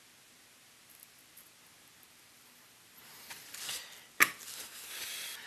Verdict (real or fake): real